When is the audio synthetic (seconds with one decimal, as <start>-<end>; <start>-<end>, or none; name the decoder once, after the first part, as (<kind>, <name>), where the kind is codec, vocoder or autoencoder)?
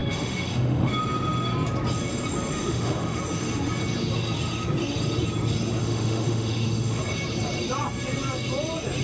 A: 0.0-0.9 (autoencoder, DAC-VAE); 2.5-3.2; 5.8-7.0